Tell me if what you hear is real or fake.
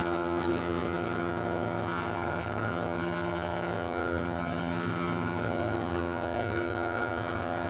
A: fake